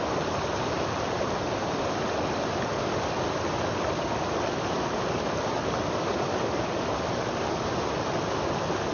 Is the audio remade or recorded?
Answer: recorded